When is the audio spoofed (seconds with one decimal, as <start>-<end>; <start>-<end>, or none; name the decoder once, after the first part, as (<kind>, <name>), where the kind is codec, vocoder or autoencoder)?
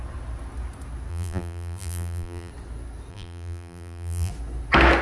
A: 1.1-2.5 (vocoder, BigVGAN v2); 3.1-4.3